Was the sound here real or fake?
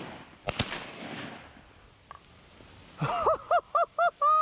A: real